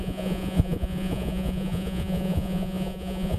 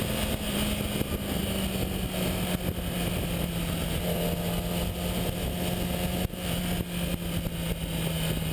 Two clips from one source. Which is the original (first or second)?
second